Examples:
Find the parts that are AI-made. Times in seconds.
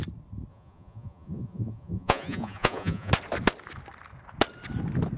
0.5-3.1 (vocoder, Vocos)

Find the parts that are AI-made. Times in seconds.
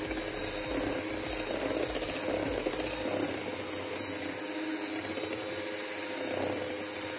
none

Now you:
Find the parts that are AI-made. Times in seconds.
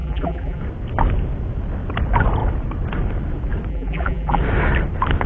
0.0-0.6 (vocoder, BigVGAN v2); 3.7-4.4